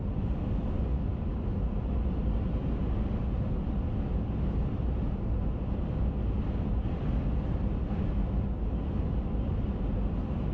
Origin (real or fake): real